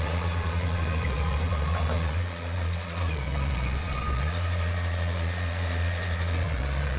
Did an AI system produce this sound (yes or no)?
yes